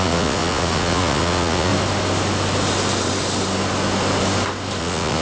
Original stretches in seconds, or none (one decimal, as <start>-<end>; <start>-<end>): 1.7-4.8